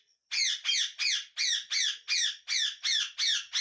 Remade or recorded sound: recorded